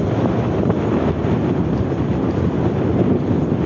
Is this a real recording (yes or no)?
yes